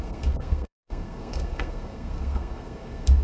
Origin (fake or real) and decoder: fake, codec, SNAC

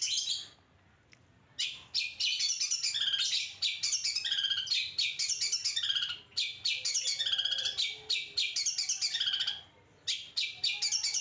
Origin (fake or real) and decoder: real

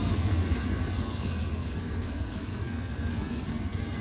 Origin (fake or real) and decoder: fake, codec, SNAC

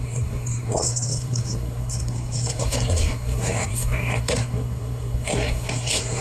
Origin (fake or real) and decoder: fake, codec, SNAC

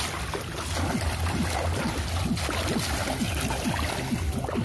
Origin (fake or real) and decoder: real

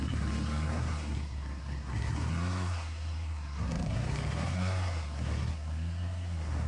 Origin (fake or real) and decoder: fake, codec, SNAC